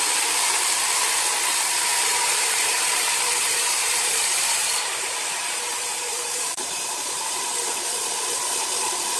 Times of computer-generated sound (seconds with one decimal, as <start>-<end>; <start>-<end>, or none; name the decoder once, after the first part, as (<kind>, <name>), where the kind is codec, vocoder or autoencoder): 2.1-2.9 (vocoder, BigVGAN v2); 3.4-7.4